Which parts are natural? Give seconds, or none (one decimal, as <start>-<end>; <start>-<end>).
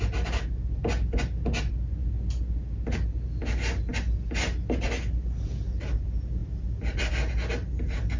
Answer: 0.0-8.2